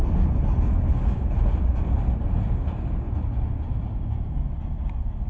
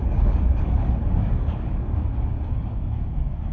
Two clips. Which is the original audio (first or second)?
first